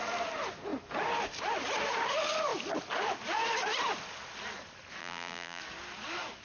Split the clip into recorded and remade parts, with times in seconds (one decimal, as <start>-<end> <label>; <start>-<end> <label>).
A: 0.0-5.0 recorded; 5.0-5.6 remade; 5.6-6.4 recorded